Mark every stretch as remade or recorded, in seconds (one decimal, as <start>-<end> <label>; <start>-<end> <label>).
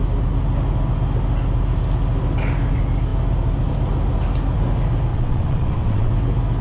0.0-5.1 recorded; 5.1-6.1 remade; 6.1-6.6 recorded